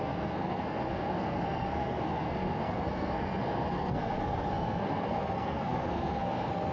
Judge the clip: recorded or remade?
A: remade